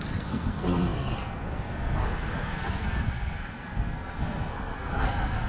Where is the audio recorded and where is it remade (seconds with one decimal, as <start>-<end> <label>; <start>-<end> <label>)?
0.0-5.5 remade